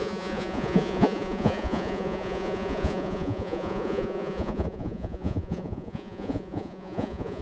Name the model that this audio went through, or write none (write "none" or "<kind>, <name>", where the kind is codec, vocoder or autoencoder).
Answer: vocoder, Vocos